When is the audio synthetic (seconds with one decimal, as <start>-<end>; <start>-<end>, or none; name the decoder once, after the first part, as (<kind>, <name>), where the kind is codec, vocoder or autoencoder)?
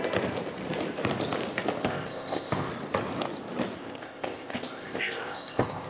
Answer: 1.8-2.7 (codec, ZipCodec); 3.8-5.9